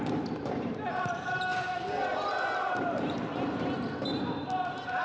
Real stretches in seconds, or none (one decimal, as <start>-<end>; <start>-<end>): 0.0-5.0

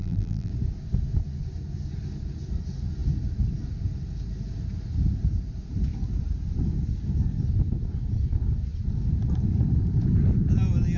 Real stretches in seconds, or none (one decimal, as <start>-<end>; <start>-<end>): 0.5-11.0

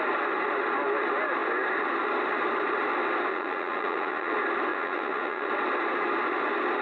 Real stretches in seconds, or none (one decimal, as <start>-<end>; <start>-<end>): 0.0-3.3; 4.3-4.7; 5.5-6.8

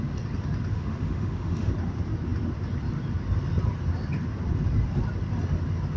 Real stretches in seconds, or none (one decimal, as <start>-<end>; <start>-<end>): 0.0-0.7; 1.7-6.0

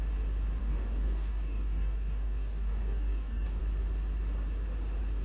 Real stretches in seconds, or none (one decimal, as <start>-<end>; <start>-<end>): 0.0-0.6; 3.6-5.2